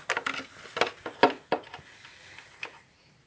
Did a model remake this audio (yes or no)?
no